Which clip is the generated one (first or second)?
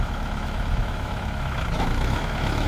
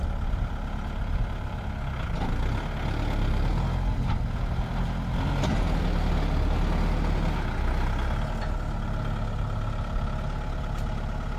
first